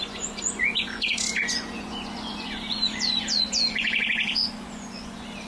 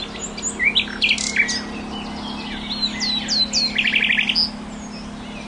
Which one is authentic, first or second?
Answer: second